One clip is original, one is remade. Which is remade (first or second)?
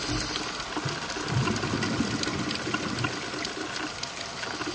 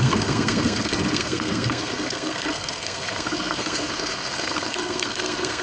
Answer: second